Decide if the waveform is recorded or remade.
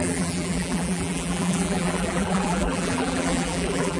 remade